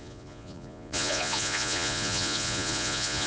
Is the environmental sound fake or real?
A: fake